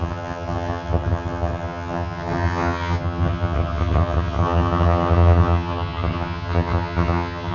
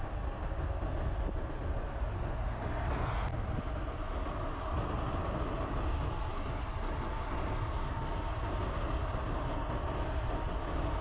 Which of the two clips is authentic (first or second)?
second